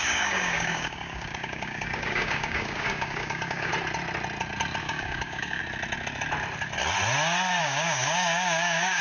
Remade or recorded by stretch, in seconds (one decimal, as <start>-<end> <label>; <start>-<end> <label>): 0.0-3.7 remade; 3.7-4.8 recorded; 4.8-5.6 remade; 5.6-7.6 recorded; 7.6-9.0 remade